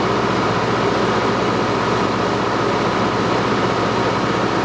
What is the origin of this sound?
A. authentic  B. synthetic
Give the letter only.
A